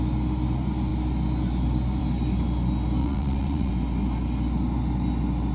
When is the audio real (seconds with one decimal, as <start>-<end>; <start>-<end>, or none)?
0.0-3.0; 3.7-5.5